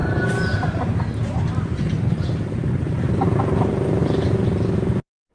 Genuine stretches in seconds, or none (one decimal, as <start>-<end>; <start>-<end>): 4.0-5.3